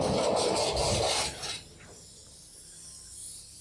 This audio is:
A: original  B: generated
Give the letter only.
A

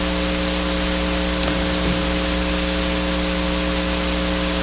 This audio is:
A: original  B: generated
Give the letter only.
A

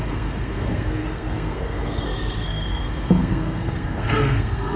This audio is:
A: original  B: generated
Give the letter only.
B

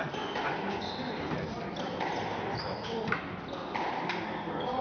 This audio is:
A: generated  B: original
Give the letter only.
B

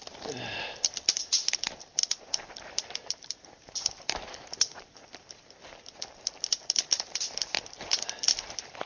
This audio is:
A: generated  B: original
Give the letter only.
B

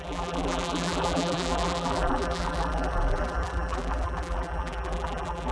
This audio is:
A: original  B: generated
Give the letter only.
B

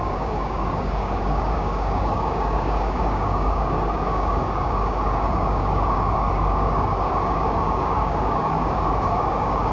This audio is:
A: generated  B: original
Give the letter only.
A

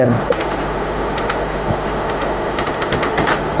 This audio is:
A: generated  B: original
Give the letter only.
A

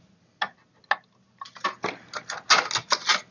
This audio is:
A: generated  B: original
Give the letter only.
B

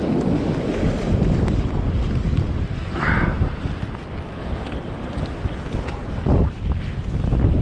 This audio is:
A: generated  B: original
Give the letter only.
B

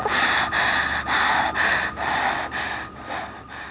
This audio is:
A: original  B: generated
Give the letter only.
A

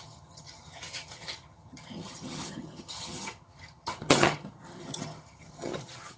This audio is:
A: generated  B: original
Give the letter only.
A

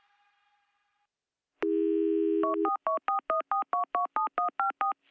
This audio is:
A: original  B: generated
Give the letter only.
A